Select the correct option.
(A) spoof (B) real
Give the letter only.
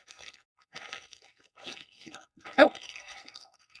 A